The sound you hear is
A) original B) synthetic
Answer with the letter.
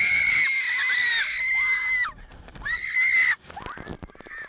A